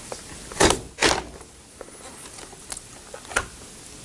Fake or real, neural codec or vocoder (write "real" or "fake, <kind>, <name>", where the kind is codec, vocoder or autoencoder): real